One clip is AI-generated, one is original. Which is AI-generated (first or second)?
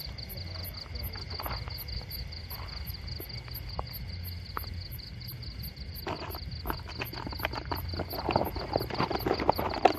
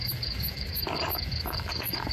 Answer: second